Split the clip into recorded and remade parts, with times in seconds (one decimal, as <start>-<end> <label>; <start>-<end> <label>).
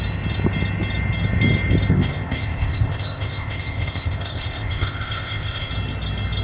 0.0-1.9 recorded; 1.9-5.7 remade; 5.7-6.4 recorded